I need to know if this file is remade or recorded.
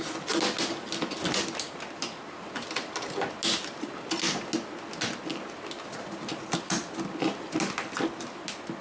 recorded